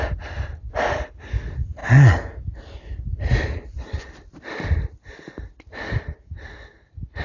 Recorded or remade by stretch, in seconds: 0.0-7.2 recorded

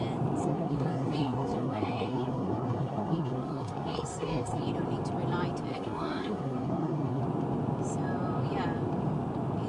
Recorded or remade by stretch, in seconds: 0.0-0.4 recorded; 0.4-4.6 remade; 4.6-5.7 recorded; 5.7-7.2 remade; 7.2-9.7 recorded

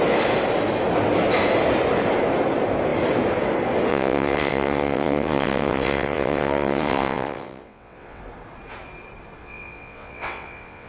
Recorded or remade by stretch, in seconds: 0.0-3.9 recorded; 3.9-8.2 remade; 8.2-9.4 recorded; 9.4-10.9 remade

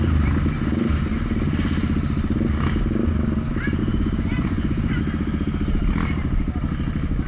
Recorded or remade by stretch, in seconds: 0.0-3.8 recorded; 3.8-5.0 remade; 5.0-7.3 recorded

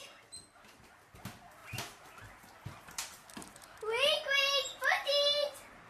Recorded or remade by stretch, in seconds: 0.0-5.9 recorded